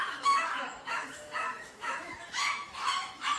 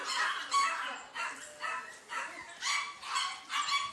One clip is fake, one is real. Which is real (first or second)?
second